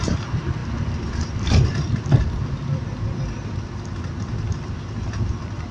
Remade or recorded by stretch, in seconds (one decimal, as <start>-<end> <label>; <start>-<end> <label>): 0.0-5.7 recorded